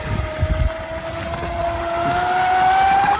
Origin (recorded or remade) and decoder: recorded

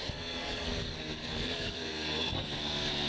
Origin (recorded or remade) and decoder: remade, codec, SNAC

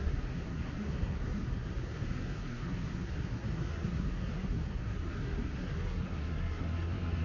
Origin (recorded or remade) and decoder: remade, codec, SNAC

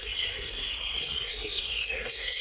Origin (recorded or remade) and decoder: remade, codec, SNAC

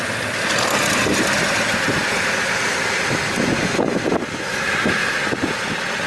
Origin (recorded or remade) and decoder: recorded